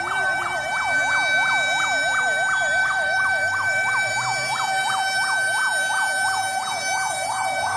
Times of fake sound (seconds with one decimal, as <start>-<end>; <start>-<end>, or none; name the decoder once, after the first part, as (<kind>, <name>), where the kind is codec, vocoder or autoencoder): 2.8-4.1 (autoencoder, DAC-VAE)